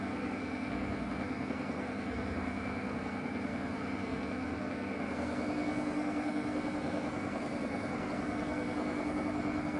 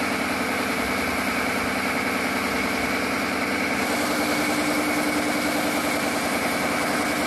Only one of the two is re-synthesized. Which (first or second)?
first